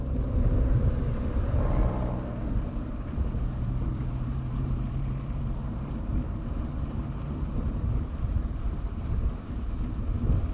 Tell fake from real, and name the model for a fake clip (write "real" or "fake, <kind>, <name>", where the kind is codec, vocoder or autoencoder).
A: fake, vocoder, BigVGAN v2